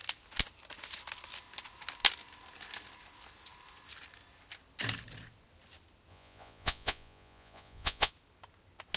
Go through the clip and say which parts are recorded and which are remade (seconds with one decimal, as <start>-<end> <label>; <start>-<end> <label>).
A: 0.0-6.1 recorded; 6.1-8.1 remade; 8.1-9.0 recorded